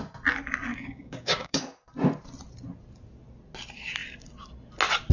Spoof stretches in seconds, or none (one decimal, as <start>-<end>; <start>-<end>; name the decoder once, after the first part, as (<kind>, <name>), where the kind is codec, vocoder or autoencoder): 0.7-1.6 (codec, DAC)